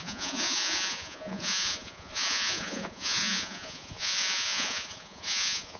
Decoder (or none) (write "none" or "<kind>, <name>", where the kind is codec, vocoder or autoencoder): vocoder, Vocos